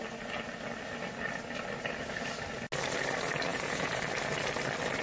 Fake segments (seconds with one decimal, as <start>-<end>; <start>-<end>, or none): 3.5-4.0